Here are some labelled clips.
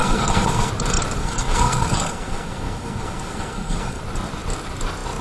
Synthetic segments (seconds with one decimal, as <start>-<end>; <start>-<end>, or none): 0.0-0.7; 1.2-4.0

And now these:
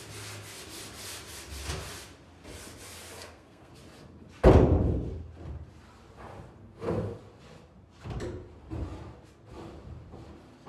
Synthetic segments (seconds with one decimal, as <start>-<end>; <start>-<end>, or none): 3.2-3.7

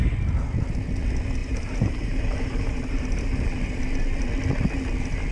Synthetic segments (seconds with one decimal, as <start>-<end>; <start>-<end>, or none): 1.4-3.8